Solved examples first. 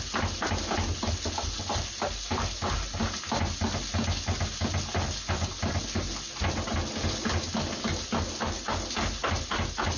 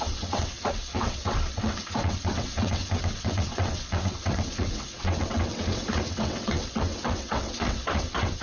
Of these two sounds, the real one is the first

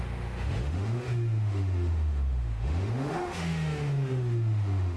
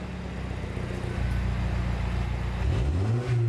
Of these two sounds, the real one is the second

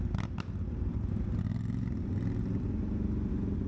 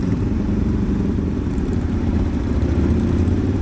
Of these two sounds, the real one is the first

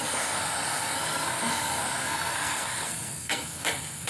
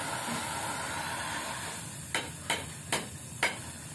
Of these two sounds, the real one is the second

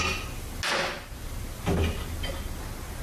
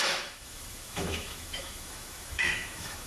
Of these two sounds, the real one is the first